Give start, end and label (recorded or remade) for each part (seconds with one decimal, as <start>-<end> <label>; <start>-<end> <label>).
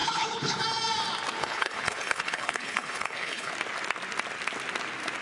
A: 0.0-0.6 remade; 0.6-1.4 recorded; 1.4-3.5 remade; 3.5-5.2 recorded